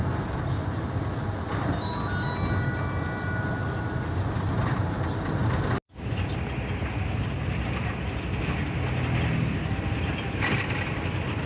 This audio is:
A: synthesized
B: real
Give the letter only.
B